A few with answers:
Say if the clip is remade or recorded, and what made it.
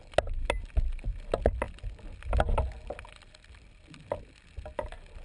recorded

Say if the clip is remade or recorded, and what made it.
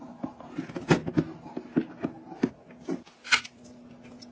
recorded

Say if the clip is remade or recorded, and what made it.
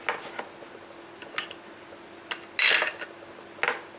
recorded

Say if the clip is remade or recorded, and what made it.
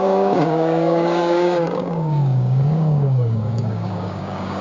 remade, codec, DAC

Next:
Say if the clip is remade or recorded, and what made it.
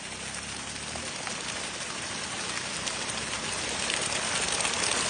recorded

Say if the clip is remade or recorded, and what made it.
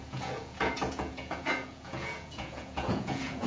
remade, vocoder, Vocos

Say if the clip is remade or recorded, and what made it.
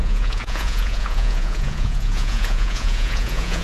remade, vocoder, Vocos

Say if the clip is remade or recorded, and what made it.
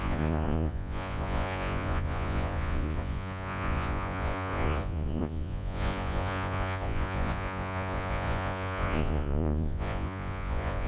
remade, vocoder, Vocos